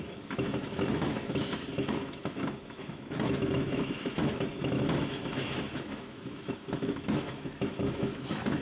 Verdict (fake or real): fake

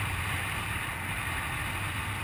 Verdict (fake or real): real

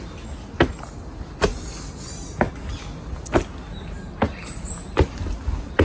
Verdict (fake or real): real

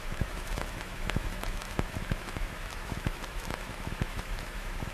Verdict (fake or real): fake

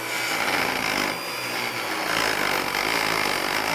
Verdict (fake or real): real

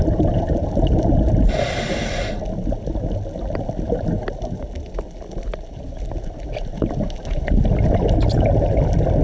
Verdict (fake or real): real